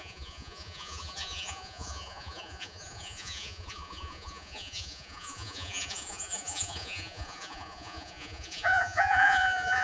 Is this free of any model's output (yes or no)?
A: no